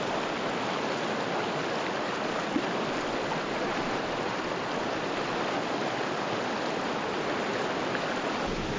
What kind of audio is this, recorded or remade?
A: recorded